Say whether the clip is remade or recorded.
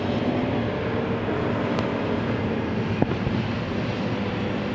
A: recorded